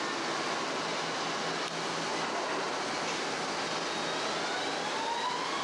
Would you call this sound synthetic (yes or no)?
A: no